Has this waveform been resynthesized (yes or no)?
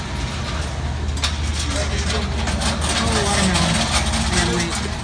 no